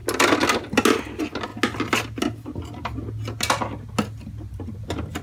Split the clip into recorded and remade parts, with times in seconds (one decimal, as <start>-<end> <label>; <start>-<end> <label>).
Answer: 0.0-5.2 recorded